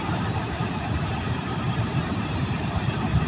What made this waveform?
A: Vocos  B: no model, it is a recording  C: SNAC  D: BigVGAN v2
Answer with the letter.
D